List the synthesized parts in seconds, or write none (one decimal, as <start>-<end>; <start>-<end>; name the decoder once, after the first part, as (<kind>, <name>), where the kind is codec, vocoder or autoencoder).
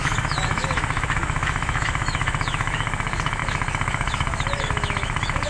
0.0-5.5 (autoencoder, DAC-VAE)